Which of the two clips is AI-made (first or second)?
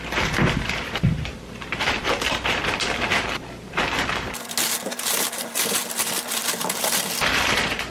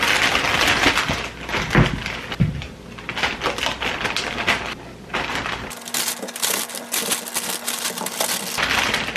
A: first